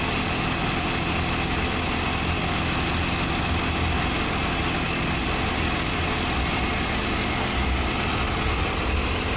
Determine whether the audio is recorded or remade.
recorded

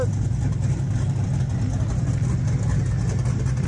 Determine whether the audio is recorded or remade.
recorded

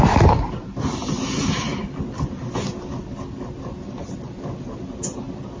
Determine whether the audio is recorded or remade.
recorded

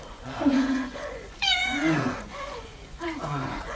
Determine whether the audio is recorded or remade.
remade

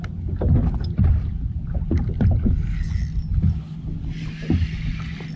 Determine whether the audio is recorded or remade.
recorded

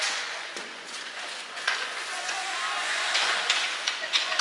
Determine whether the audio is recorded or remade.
remade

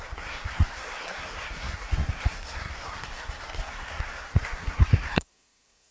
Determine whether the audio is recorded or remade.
remade